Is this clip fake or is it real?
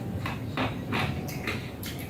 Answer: real